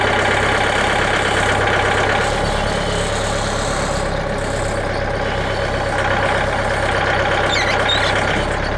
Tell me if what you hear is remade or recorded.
recorded